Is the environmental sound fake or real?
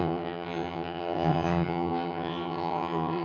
fake